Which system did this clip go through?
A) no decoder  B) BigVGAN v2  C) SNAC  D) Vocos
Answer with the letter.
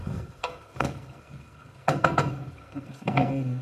C